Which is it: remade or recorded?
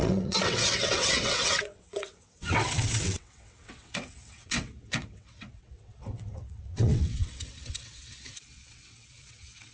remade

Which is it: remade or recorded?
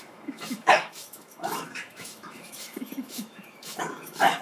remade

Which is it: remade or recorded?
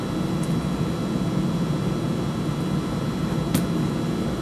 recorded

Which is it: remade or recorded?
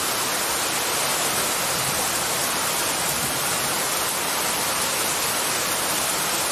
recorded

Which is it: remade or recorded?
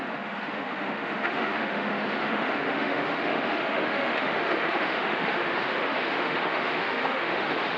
remade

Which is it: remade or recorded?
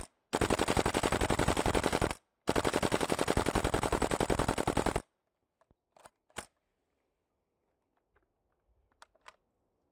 recorded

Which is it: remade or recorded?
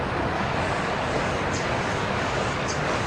remade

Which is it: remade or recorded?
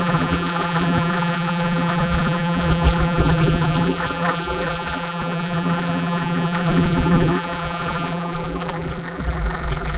remade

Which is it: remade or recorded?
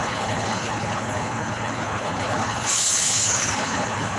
remade